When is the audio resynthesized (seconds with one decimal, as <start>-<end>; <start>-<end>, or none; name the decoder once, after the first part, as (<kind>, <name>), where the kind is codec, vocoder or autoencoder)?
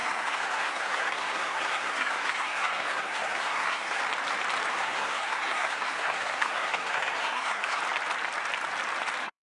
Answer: 0.0-4.0 (codec, SNAC); 4.7-7.8; 9.2-9.6